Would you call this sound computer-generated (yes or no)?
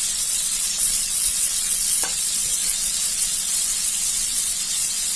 yes